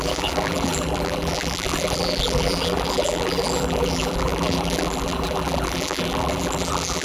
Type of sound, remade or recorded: remade